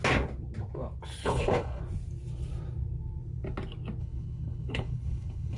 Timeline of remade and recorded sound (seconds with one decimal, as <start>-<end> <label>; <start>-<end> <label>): 0.0-1.2 recorded; 1.2-1.8 remade; 1.8-4.0 recorded; 4.0-5.6 remade